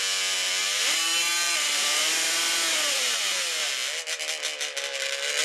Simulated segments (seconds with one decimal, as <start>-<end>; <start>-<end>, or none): 0.6-3.7